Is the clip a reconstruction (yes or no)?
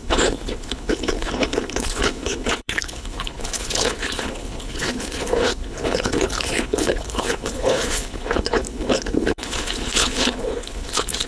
yes